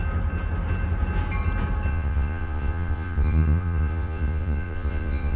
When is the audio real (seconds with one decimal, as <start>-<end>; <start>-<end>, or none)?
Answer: 0.0-1.9